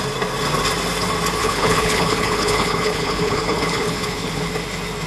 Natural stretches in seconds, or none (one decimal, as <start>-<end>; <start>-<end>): 0.0-1.4; 4.5-5.1